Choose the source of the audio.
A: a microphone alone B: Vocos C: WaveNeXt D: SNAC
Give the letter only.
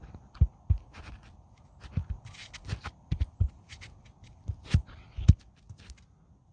A